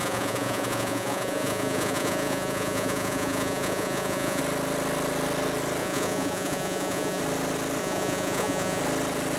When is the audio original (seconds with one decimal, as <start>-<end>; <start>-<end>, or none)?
4.4-5.8; 7.2-7.8; 8.8-9.4